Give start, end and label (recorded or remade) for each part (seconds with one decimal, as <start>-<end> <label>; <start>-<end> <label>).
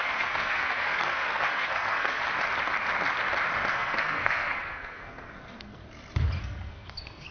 0.0-2.2 remade; 2.2-3.7 recorded; 3.7-5.8 remade; 5.8-6.4 recorded; 6.4-7.3 remade